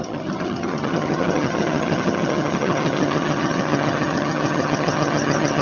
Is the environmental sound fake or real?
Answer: fake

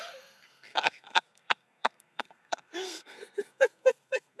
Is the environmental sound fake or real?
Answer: fake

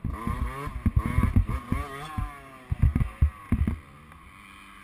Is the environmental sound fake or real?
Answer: real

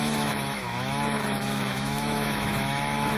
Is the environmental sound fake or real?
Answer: fake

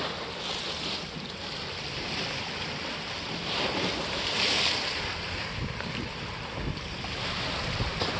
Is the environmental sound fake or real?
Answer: real